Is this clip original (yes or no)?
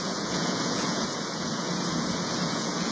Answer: no